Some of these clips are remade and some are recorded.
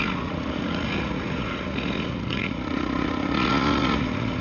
remade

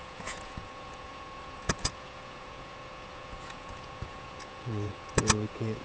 remade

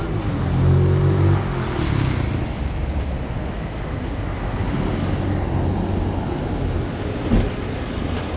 recorded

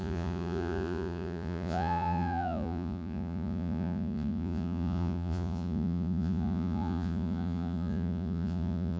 remade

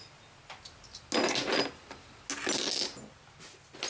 recorded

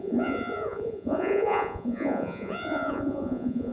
remade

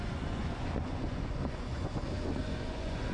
remade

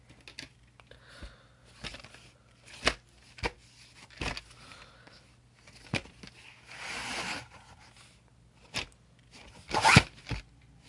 recorded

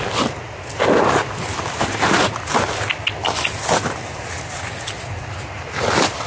recorded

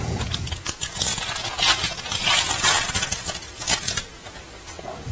remade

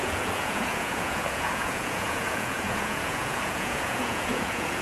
remade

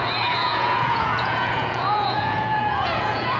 remade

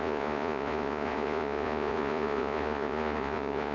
remade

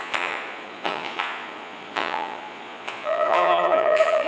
remade